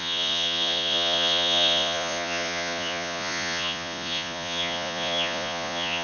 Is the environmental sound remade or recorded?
remade